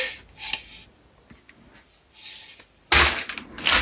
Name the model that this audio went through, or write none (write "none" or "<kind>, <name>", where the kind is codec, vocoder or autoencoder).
none